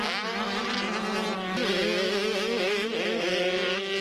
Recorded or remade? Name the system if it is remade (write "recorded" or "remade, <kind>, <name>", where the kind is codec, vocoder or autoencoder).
recorded